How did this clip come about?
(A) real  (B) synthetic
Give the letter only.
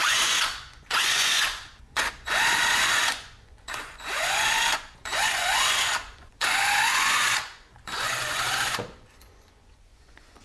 B